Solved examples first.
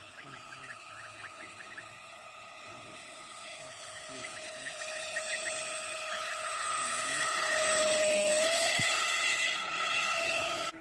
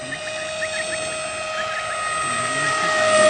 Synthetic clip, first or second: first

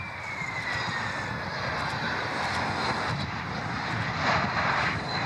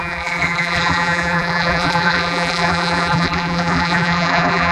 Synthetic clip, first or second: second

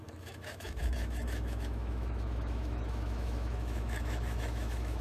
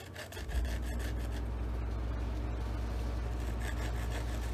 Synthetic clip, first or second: first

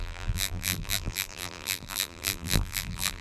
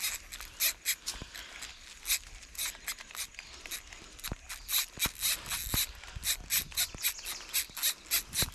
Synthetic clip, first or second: first